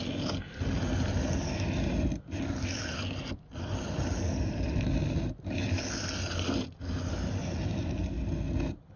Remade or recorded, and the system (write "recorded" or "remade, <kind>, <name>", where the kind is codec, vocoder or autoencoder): recorded